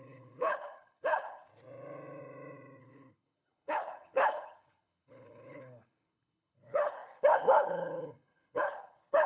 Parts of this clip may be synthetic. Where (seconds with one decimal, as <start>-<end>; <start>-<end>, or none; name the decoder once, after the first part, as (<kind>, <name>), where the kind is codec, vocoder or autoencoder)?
0.0-1.5 (codec, HILCodec); 2.8-9.3